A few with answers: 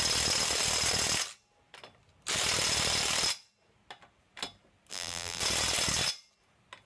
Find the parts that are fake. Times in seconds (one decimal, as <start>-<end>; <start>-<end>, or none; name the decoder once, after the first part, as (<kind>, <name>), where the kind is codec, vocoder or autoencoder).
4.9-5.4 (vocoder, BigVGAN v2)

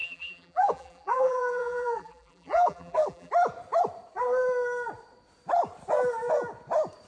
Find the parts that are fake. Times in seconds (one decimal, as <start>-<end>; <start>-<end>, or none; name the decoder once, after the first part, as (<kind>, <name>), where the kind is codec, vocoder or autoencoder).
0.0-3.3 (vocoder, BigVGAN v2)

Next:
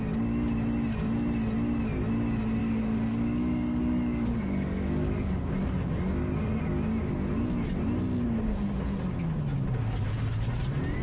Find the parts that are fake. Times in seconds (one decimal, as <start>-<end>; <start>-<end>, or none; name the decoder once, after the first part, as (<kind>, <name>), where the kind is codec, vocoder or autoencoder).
2.6-5.5 (codec, DAC)

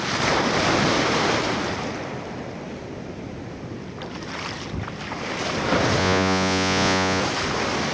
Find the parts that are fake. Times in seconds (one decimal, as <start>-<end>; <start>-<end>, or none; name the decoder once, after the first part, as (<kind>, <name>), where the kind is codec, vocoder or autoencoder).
6.0-7.2 (vocoder, Vocos)

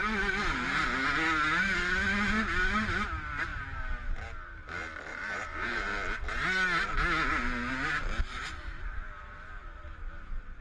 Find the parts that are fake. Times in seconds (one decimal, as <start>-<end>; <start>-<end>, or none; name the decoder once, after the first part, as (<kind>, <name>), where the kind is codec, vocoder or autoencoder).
3.5-4.1 (vocoder, BigVGAN v2); 5.1-5.8; 7.4-9.0

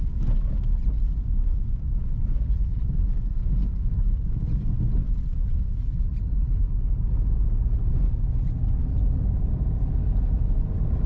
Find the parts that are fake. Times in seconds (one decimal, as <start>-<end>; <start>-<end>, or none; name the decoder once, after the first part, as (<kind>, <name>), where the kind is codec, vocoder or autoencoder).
3.7-4.5 (vocoder, Vocos); 10.0-10.7

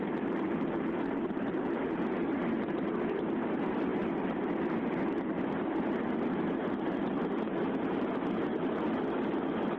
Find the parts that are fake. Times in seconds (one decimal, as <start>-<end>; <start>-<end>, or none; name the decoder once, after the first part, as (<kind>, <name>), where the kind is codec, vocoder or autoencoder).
none

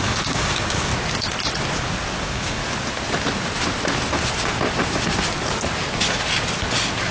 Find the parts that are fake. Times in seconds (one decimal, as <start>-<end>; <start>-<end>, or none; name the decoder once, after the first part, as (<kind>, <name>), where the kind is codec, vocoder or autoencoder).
0.0-0.9 (codec, DAC); 2.2-2.6